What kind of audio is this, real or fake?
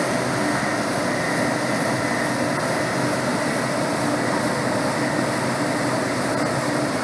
real